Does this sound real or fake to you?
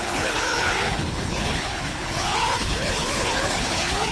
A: fake